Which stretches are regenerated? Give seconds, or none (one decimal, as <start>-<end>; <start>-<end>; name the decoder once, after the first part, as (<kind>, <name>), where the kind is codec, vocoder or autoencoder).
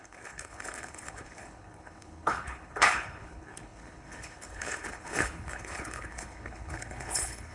0.0-7.5 (codec, HILCodec)